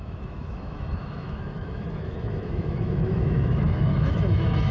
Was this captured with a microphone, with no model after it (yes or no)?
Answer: no